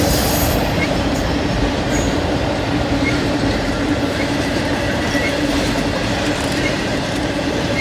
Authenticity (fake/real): fake